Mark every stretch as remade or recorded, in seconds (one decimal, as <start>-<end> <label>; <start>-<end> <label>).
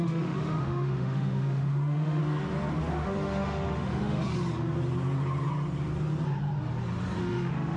0.0-2.2 remade; 2.2-2.9 recorded; 2.9-4.2 remade; 4.2-7.2 recorded; 7.2-7.8 remade